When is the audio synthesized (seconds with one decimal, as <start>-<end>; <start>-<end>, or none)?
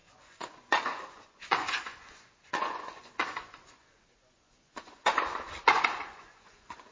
0.0-6.9